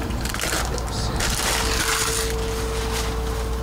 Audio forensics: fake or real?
real